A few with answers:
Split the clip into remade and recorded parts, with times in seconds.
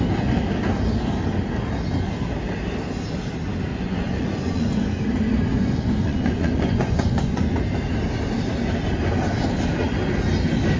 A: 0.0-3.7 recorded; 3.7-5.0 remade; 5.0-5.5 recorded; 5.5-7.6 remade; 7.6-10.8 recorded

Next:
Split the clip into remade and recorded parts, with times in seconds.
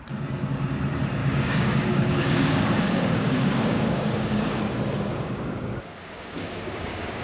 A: 0.0-1.2 recorded; 1.2-4.6 remade; 4.6-5.1 recorded; 5.1-7.2 remade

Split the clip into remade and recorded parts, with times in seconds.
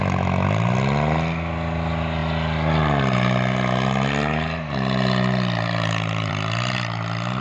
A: 0.0-7.4 recorded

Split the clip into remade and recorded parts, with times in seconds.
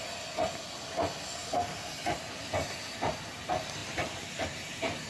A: 0.0-3.8 recorded; 3.8-5.1 remade